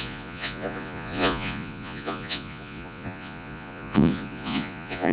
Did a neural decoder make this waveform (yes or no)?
yes